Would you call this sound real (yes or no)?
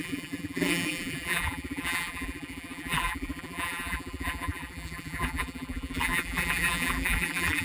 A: no